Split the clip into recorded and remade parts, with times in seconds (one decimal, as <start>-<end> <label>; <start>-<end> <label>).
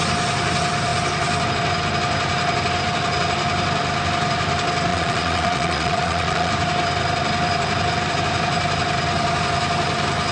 0.0-4.9 recorded; 4.9-6.5 remade; 6.5-10.3 recorded